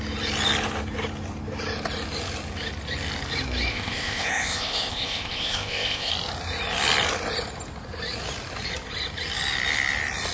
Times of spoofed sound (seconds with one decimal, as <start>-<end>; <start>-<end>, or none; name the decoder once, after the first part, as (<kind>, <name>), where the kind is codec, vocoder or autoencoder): 3.7-6.1 (codec, ZipCodec)